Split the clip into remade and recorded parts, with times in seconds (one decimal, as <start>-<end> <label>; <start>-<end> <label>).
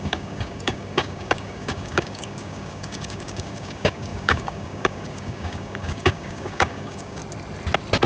0.0-7.2 remade; 7.2-8.1 recorded